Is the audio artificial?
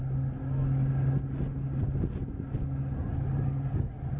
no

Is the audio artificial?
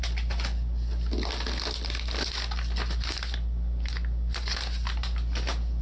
no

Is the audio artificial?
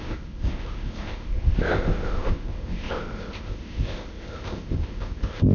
yes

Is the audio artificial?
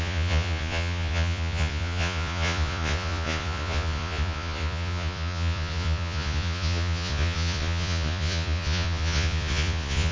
yes